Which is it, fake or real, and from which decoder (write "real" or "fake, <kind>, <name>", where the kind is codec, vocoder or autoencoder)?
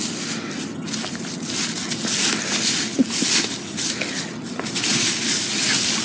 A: real